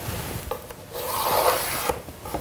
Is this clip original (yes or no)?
yes